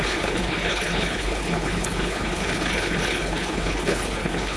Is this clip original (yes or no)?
no